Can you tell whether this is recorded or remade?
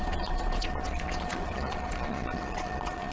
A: remade